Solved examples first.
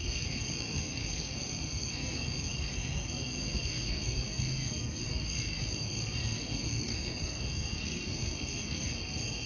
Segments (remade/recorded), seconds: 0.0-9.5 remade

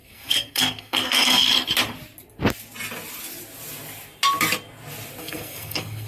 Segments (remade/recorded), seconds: 0.0-1.5 remade; 1.5-5.2 recorded; 5.2-6.1 remade